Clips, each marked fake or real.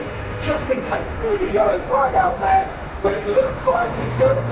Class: fake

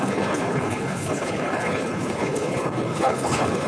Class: fake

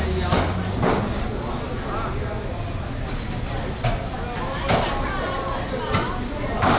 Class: real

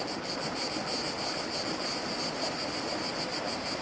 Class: real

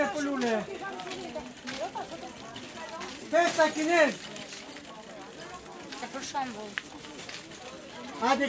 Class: real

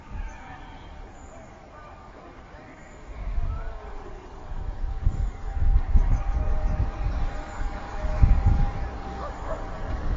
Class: fake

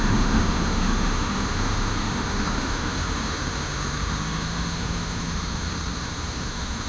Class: fake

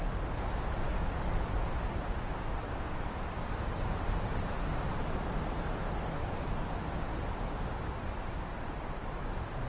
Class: real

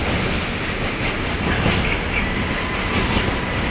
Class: real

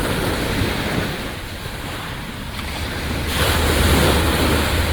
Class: fake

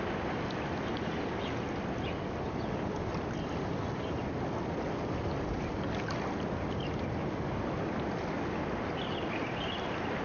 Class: real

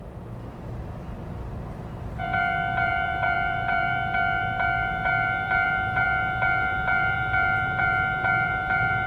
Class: fake